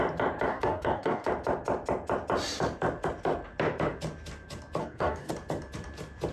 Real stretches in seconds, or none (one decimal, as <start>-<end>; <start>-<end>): 0.0-0.5; 1.3-4.8; 5.3-6.3